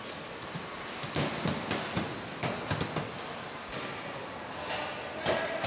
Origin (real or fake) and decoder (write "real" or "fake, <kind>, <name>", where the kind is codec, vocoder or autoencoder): real